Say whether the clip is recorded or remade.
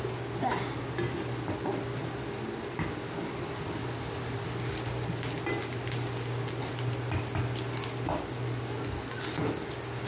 recorded